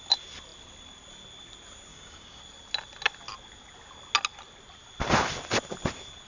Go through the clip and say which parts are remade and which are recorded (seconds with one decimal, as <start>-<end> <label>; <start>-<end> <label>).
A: 0.0-1.9 recorded; 1.9-2.4 remade; 2.4-6.3 recorded